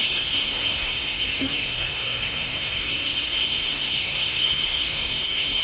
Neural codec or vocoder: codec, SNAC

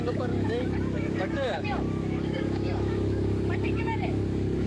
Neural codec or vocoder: codec, DAC